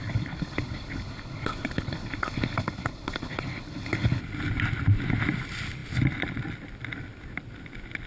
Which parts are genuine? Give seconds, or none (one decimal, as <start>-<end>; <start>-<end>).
4.2-8.1